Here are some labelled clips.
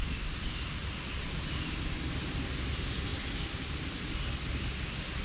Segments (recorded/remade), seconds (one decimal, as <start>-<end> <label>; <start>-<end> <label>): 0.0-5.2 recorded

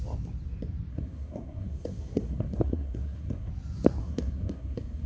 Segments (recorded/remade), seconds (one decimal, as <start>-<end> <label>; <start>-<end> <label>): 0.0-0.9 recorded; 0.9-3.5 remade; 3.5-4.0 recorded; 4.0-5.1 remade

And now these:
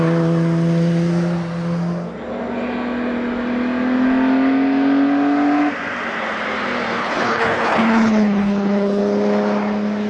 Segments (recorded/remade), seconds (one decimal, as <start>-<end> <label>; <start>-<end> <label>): 0.0-7.0 recorded; 7.0-9.0 remade; 9.0-10.1 recorded

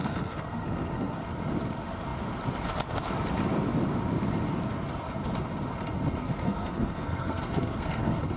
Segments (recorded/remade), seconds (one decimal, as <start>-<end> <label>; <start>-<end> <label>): 0.0-1.2 remade; 1.2-6.2 recorded; 6.2-8.4 remade